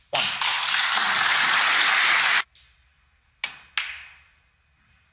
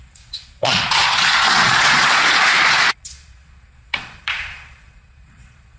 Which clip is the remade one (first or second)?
second